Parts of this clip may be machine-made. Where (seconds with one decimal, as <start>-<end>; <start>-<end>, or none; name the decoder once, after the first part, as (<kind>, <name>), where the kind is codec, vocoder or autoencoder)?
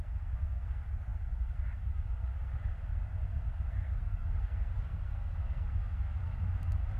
0.0-7.0 (codec, SNAC)